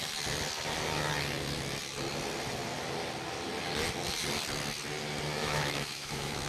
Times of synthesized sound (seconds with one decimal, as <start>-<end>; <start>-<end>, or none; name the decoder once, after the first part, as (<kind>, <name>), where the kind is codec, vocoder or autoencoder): 5.4-6.5 (autoencoder, DAC-VAE)